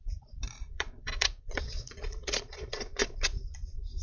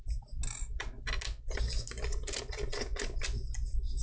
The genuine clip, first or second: second